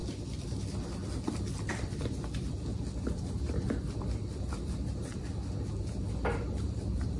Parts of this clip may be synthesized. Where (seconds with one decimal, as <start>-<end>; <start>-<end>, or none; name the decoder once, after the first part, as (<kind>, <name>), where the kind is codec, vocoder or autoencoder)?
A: none